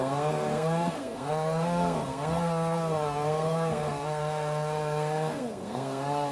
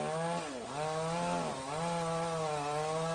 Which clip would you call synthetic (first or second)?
first